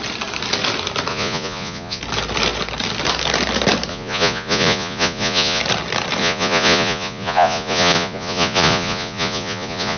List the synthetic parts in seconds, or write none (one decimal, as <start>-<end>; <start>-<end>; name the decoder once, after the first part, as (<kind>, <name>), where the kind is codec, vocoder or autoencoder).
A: 1.1-2.0 (vocoder, Vocos); 3.9-5.6; 6.2-10.0